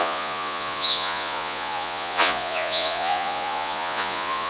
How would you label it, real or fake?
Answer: fake